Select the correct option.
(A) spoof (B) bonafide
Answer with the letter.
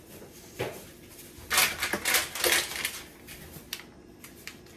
B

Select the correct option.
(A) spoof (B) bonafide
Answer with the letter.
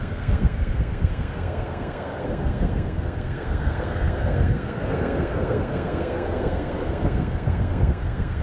A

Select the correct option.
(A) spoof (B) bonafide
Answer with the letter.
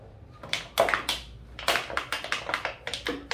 B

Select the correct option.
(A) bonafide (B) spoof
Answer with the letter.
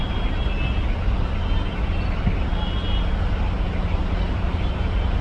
A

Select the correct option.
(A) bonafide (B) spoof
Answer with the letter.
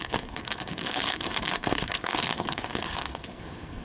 B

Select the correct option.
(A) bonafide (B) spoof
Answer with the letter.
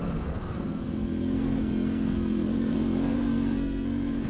B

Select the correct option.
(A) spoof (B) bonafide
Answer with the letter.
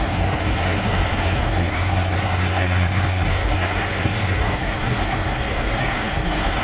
A